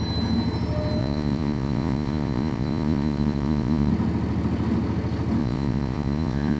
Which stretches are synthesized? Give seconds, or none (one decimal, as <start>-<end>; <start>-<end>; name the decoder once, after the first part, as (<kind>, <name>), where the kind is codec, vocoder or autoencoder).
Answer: 1.0-3.9 (vocoder, Vocos); 5.4-6.6